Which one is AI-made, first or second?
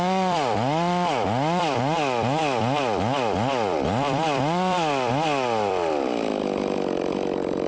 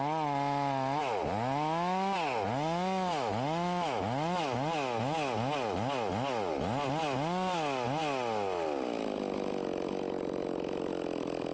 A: first